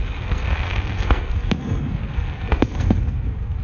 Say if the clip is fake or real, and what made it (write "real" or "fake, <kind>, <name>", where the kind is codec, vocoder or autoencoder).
fake, codec, SNAC